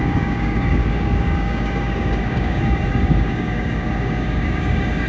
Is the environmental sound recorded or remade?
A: remade